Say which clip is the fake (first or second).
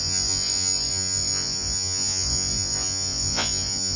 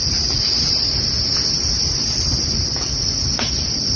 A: first